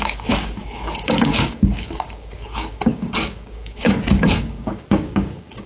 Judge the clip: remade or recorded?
remade